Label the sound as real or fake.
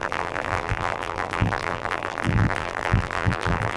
fake